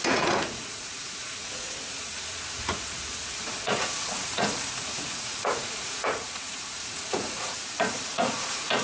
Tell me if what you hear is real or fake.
fake